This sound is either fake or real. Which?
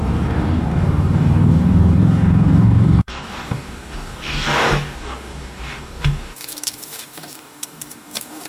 fake